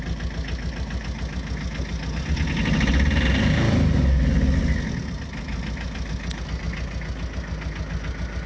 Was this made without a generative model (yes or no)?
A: yes